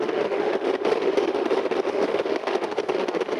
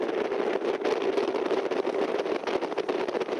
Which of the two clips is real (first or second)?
second